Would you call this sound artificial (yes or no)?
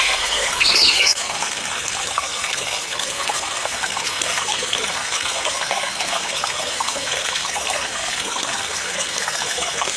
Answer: yes